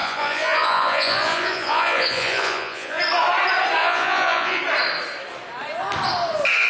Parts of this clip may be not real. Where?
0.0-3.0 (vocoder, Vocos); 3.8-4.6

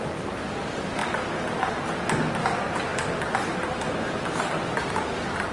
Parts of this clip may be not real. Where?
none

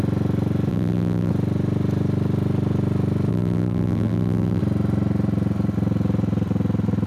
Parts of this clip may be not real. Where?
0.7-1.3 (vocoder, BigVGAN v2); 3.3-4.6

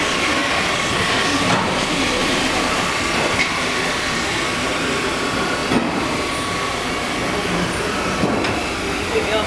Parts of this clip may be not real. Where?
2.2-3.3 (vocoder, BigVGAN v2)

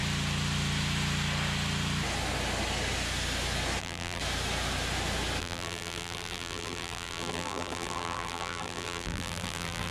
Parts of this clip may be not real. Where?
3.8-4.2 (vocoder, BigVGAN v2); 5.4-9.9

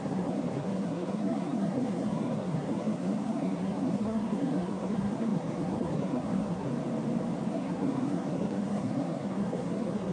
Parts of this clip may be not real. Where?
0.0-6.7 (codec, SNAC); 7.5-10.1

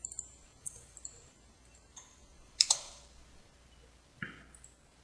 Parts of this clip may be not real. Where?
0.0-3.0 (vocoder, BigVGAN v2)

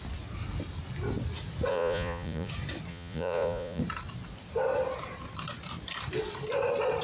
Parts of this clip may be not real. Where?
1.7-2.5 (vocoder, Vocos); 2.9-3.8